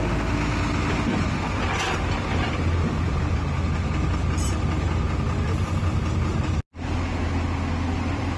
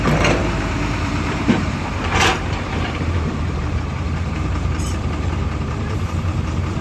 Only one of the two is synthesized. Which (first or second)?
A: second